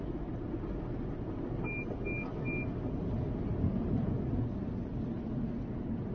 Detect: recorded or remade recorded